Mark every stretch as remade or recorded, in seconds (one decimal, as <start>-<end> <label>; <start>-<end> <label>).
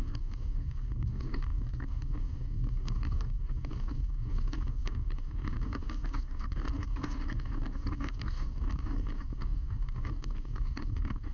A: 0.0-11.3 remade